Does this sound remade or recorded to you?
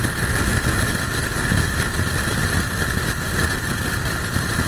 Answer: recorded